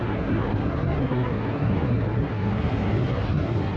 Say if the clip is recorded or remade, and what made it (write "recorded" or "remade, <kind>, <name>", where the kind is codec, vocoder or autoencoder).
remade, codec, SNAC